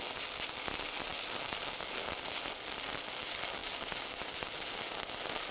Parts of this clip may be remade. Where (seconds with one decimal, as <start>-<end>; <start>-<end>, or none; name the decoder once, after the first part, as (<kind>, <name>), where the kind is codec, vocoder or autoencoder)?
1.1-2.1 (vocoder, BigVGAN v2)